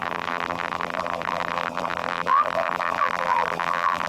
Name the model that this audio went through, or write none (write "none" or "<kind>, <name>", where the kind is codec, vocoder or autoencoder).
vocoder, BigVGAN v2